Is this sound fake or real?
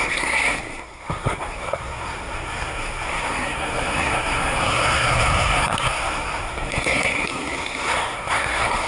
fake